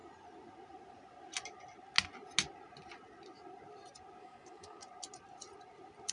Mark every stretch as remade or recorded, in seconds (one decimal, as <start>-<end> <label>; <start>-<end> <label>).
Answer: 0.0-4.2 recorded; 4.2-4.8 remade; 4.8-6.1 recorded